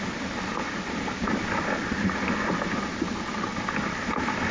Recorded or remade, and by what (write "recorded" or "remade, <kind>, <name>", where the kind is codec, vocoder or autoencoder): recorded